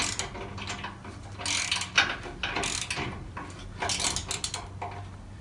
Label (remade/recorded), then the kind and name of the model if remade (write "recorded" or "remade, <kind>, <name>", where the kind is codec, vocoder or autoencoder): recorded